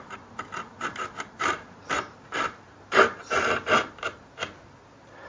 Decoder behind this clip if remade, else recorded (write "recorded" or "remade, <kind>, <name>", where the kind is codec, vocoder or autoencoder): remade, vocoder, BigVGAN v2